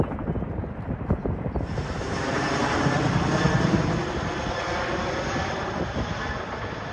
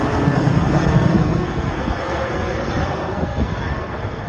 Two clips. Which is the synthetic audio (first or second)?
second